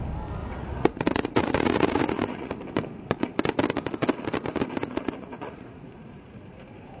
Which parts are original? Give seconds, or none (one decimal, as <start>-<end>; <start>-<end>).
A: 0.0-0.4; 2.5-4.8